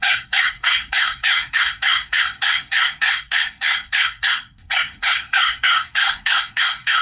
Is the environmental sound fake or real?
fake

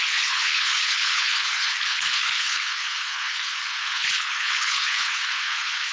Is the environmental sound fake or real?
fake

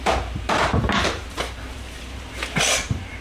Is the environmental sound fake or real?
fake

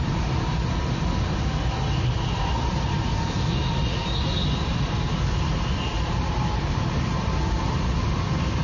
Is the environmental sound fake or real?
real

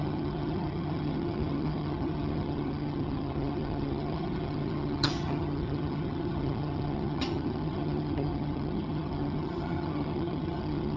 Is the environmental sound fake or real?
fake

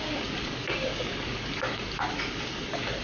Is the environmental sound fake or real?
fake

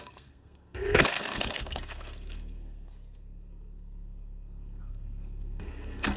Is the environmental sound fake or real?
fake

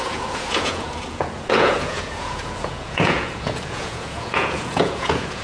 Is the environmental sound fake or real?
fake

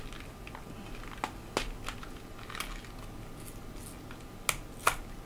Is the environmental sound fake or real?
real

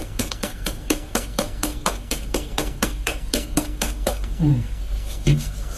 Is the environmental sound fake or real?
fake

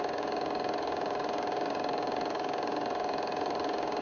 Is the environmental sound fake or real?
fake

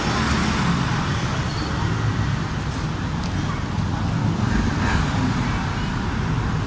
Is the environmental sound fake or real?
real